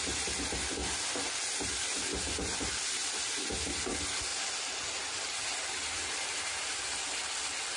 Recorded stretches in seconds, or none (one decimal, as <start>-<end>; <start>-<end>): 0.0-4.3; 7.2-7.8